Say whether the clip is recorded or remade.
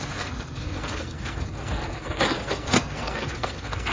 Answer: remade